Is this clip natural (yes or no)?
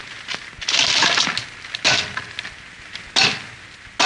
yes